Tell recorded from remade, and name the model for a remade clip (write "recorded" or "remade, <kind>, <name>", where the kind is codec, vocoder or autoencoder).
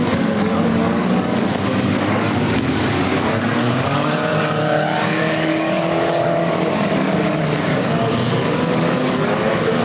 remade, codec, DAC